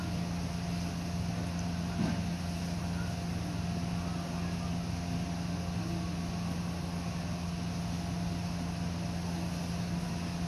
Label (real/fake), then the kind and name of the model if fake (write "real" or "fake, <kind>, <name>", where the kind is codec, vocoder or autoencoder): real